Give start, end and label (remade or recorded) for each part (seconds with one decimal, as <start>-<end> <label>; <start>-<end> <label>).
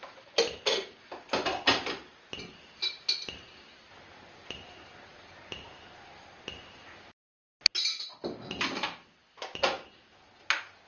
0.0-10.9 recorded